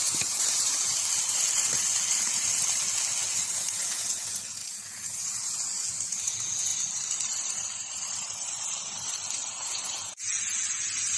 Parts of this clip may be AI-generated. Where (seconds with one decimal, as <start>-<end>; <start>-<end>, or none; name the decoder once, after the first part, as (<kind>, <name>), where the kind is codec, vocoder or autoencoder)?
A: 0.0-0.9 (vocoder, Vocos); 3.5-6.7; 9.5-11.2